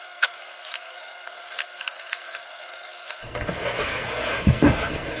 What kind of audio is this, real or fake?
fake